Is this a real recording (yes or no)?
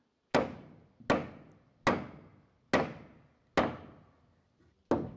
yes